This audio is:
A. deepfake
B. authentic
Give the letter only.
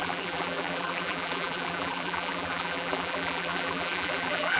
A